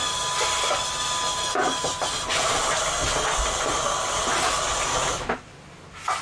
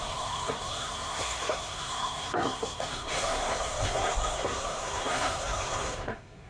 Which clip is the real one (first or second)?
first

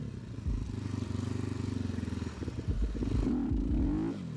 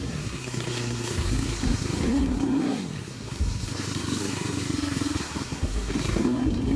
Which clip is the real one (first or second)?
first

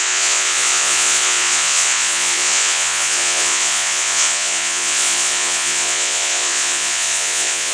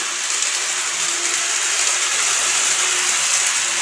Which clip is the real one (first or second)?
second